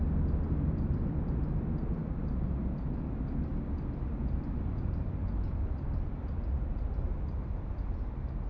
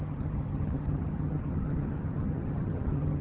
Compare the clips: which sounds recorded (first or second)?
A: first